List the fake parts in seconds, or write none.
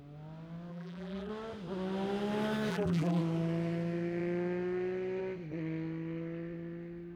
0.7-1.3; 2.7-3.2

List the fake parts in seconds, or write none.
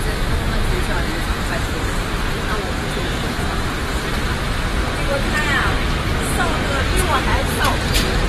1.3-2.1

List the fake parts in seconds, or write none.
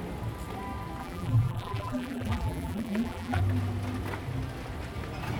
1.0-3.4